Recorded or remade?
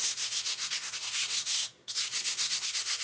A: remade